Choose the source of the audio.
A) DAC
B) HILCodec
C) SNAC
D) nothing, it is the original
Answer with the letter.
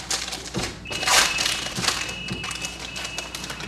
D